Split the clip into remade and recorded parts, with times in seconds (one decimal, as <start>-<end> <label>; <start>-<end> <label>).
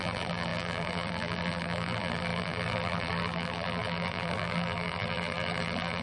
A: 0.0-6.0 remade